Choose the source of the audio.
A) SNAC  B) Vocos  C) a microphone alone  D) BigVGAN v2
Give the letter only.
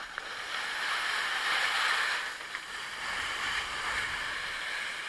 C